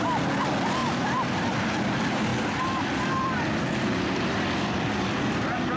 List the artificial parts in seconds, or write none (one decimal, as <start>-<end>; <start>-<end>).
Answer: 0.8-1.4; 2.3-5.8